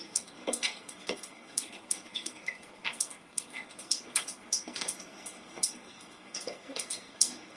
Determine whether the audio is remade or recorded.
remade